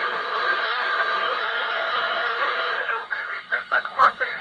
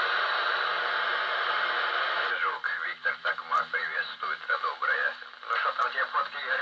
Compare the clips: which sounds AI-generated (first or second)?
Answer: first